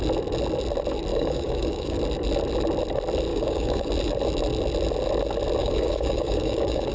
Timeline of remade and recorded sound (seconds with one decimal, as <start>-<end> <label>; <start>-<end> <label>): 0.0-1.1 recorded; 1.1-2.0 remade; 2.0-3.3 recorded; 3.3-3.9 remade; 3.9-5.6 recorded; 5.6-6.9 remade